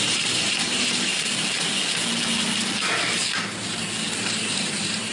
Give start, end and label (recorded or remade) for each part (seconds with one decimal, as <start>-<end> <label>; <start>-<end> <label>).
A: 0.0-1.1 remade; 1.1-4.2 recorded; 4.2-5.1 remade